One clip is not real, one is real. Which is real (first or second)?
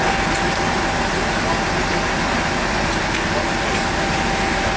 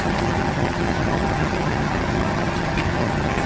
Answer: first